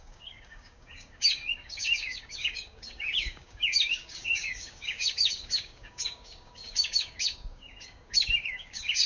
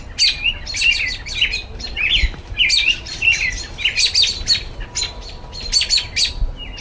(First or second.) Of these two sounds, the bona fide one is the second